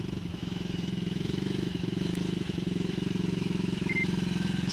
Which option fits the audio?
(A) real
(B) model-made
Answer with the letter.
B